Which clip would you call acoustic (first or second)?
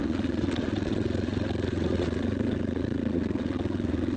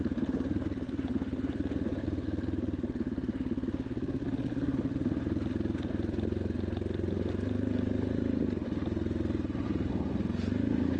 second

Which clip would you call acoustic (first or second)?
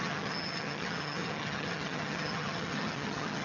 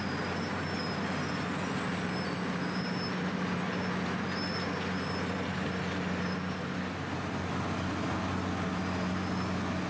second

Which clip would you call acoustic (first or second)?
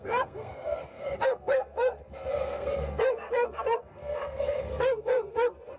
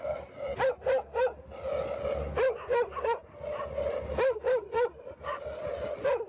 second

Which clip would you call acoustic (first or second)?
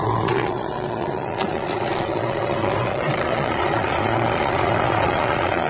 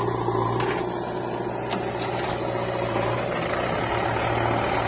second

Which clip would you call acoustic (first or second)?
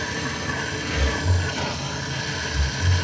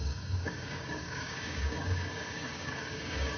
first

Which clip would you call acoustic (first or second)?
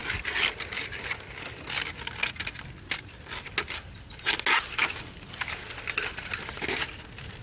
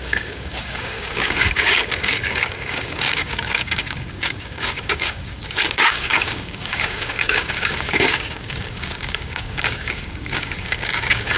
first